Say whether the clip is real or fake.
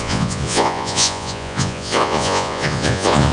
fake